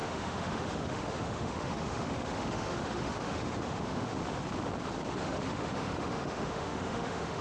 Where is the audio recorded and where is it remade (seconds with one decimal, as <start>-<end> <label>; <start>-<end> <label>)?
0.0-4.2 remade; 4.2-5.1 recorded; 5.1-7.4 remade